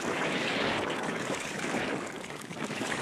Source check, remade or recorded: remade